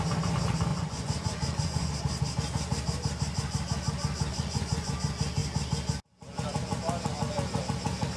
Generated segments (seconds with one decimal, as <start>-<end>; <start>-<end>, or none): 0.7-1.9; 4.3-4.9